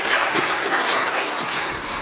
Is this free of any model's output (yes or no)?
no